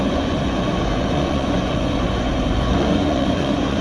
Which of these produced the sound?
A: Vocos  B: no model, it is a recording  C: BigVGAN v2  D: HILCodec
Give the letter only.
A